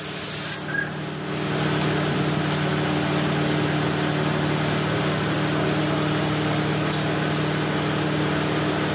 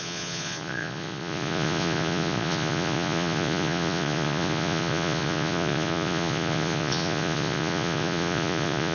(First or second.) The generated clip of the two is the second